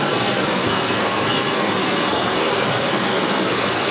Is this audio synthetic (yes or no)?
yes